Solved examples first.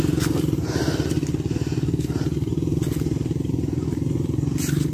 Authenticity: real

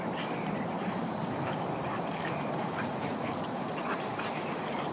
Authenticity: fake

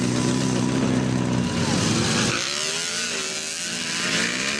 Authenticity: real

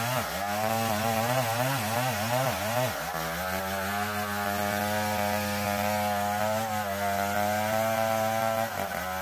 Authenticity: real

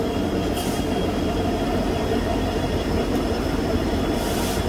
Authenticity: fake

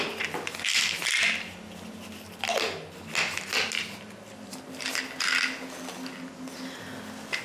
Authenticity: real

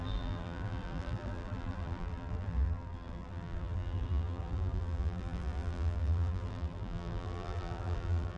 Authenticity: fake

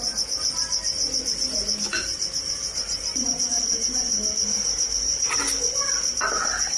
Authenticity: real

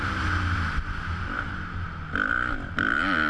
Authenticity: real